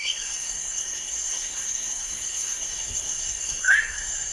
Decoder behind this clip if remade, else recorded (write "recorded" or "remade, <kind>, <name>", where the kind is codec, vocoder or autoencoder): remade, codec, SNAC